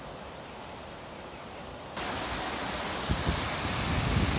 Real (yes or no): yes